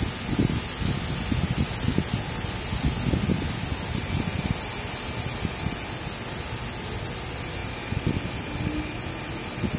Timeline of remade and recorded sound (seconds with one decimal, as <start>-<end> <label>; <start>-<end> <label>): 0.0-9.8 recorded